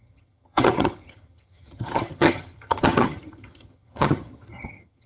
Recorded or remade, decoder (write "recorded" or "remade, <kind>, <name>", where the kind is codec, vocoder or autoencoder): remade, vocoder, HiFi-GAN